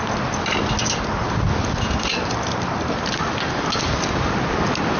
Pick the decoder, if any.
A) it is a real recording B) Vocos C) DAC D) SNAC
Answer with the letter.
A